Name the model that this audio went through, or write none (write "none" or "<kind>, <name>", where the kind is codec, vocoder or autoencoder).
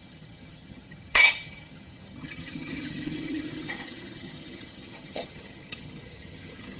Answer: vocoder, HiFi-GAN